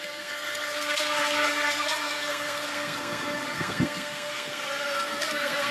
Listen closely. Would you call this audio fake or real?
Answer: fake